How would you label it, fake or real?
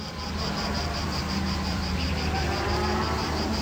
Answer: fake